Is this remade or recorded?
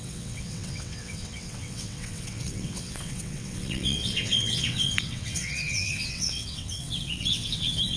remade